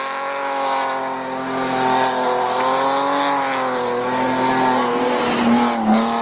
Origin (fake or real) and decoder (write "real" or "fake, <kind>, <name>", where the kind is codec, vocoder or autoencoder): real